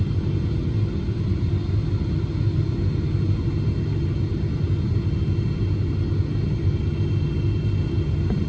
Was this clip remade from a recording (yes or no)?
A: no